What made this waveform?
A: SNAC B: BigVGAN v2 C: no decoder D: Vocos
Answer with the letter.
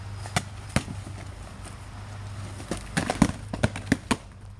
C